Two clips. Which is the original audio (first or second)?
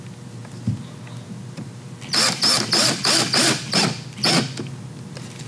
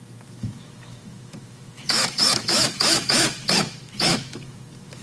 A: first